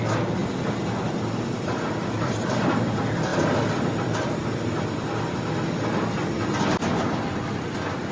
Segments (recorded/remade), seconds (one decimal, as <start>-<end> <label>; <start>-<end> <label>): 0.0-0.4 recorded; 0.4-2.8 remade; 2.8-8.1 recorded